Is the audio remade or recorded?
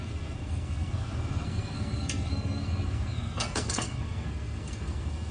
remade